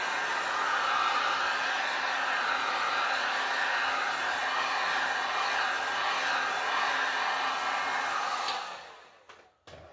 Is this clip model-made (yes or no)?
no